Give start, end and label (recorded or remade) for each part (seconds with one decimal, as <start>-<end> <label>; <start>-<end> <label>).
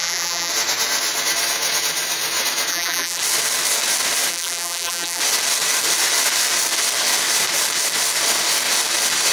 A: 0.0-0.5 remade; 0.5-2.7 recorded; 2.7-3.2 remade; 3.2-4.3 recorded; 4.3-5.2 remade; 5.2-9.3 recorded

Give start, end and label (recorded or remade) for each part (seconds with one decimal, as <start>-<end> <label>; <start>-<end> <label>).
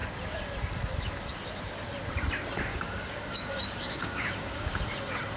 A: 0.0-2.7 recorded; 2.7-4.8 remade; 4.8-5.4 recorded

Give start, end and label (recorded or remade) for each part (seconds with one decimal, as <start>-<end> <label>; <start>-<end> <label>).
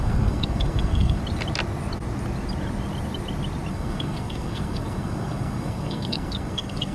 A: 0.0-1.2 remade; 1.2-3.7 recorded; 3.7-6.9 remade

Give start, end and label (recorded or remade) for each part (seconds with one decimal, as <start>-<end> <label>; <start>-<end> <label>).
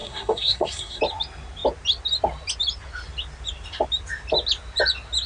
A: 0.0-1.0 remade; 1.0-5.3 recorded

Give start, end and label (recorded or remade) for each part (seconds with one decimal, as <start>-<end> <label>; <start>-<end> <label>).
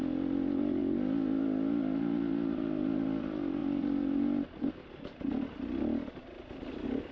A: 0.0-7.1 recorded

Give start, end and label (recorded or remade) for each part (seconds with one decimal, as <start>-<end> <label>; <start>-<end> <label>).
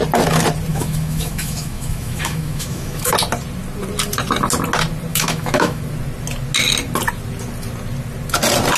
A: 0.0-0.7 recorded; 0.7-3.1 remade; 3.1-5.1 recorded; 5.1-5.8 remade; 5.8-8.8 recorded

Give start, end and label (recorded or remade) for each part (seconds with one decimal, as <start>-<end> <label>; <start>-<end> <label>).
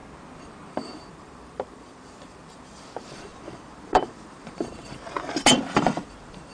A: 0.0-0.7 recorded; 0.7-6.5 remade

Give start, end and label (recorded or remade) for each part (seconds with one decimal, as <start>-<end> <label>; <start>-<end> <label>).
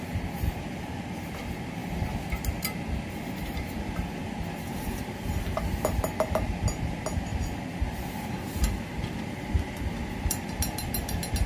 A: 0.0-11.5 recorded